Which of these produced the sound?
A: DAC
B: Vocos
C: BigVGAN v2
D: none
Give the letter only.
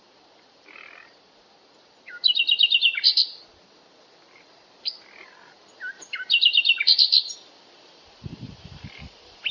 C